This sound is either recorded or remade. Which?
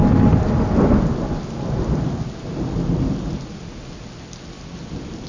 recorded